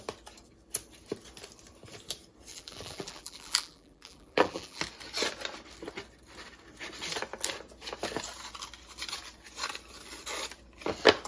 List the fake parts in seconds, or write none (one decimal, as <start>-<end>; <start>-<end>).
2.5-4.8